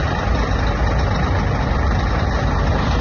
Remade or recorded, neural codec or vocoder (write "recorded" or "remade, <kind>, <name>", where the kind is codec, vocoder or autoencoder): recorded